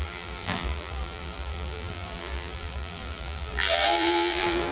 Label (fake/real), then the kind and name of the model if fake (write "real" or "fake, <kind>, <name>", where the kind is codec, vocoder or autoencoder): fake, vocoder, BigVGAN v2